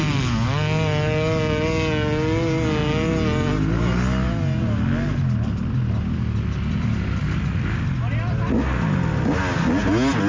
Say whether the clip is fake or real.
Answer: real